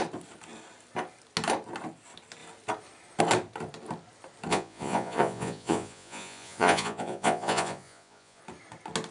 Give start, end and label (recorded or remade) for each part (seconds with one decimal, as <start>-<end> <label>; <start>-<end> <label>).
0.0-4.5 recorded; 4.5-8.4 remade; 8.4-9.1 recorded